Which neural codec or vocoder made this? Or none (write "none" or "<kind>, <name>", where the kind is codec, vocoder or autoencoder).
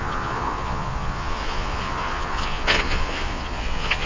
vocoder, Vocos